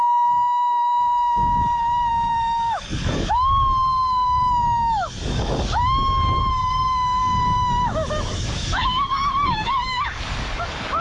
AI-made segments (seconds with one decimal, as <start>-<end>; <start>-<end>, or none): 0.0-11.0